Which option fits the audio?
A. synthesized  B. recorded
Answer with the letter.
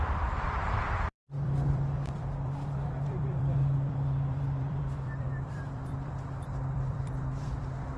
A